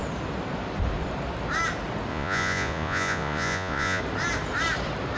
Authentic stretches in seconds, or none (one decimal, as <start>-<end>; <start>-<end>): 0.0-2.1; 4.0-5.2